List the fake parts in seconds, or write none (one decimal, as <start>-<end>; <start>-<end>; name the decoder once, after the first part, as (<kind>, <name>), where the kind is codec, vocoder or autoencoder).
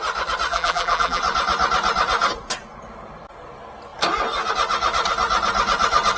0.5-1.2 (vocoder, BigVGAN v2)